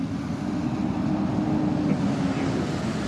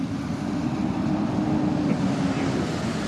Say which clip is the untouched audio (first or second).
first